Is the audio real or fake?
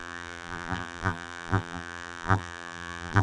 fake